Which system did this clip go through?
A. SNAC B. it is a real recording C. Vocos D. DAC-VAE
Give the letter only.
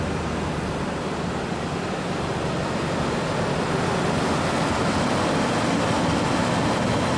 B